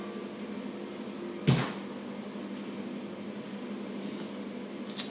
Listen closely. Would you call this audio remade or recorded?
recorded